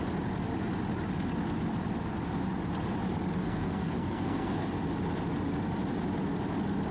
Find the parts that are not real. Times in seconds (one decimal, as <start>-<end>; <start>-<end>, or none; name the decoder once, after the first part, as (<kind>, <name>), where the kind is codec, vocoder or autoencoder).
3.4-4.7 (codec, SNAC)